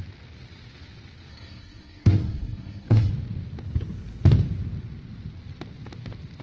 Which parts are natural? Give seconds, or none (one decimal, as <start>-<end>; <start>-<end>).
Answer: 0.0-1.3; 3.1-6.4